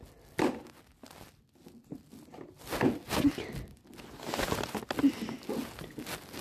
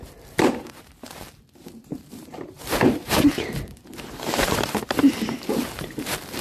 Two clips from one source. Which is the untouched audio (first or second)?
first